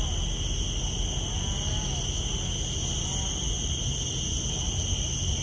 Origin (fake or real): real